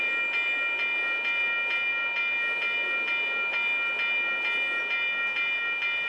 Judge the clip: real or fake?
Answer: real